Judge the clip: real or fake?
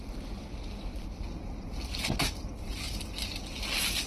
real